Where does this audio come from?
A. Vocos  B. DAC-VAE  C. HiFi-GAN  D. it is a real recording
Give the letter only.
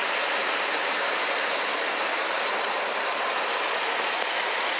D